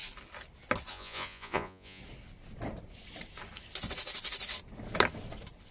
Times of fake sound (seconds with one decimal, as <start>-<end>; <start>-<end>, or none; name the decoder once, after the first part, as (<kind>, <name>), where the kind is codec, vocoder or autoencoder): 0.9-2.0 (vocoder, Vocos)